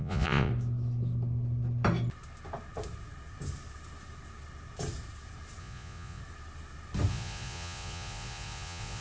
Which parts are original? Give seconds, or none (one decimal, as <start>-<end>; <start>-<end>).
0.5-5.6; 6.2-7.1